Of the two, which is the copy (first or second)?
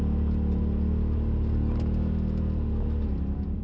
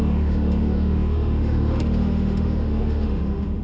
second